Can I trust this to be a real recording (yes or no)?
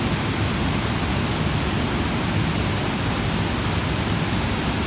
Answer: yes